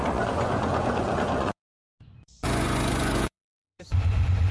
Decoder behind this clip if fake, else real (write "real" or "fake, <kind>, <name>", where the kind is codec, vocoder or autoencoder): fake, vocoder, Vocos